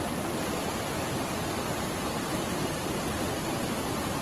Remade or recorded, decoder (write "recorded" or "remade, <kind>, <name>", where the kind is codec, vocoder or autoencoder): recorded